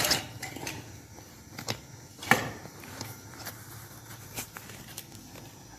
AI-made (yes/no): yes